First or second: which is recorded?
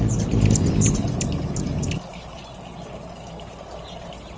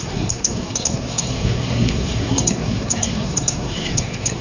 first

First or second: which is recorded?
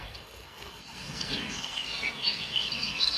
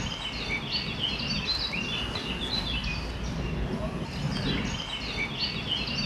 second